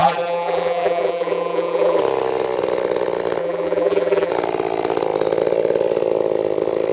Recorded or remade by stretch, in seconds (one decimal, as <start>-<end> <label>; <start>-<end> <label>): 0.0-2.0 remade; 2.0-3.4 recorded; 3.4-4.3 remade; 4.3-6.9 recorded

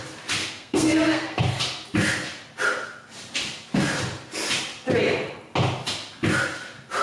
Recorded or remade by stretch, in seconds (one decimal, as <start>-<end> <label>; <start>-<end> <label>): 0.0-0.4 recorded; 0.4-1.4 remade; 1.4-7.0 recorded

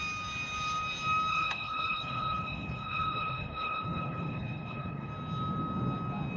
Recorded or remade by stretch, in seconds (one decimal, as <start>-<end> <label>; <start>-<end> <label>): 0.0-1.3 recorded; 1.3-5.1 remade; 5.1-6.4 recorded

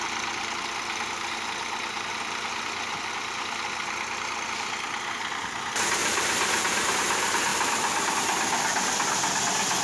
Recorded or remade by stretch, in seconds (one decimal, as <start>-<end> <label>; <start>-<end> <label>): 0.0-6.0 recorded; 6.0-6.9 remade; 6.9-7.5 recorded; 7.5-8.1 remade; 8.1-9.8 recorded

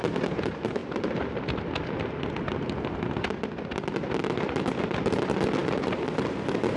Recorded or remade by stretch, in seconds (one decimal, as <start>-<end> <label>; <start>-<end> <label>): 0.0-5.6 recorded; 5.6-6.1 remade; 6.1-6.8 recorded

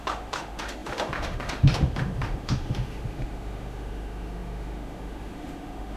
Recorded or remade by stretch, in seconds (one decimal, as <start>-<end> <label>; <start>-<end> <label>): 0.0-6.0 remade

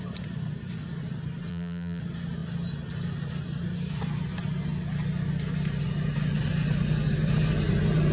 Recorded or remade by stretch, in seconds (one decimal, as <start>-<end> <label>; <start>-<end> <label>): 0.0-1.5 recorded; 1.5-2.0 remade; 2.0-8.1 recorded

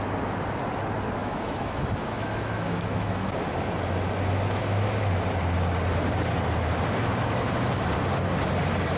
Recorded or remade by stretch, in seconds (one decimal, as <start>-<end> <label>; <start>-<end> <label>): 0.0-1.2 recorded; 1.2-3.3 remade; 3.3-9.0 recorded